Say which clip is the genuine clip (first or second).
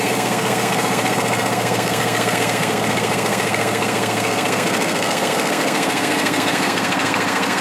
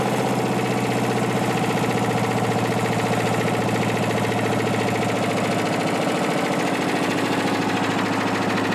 second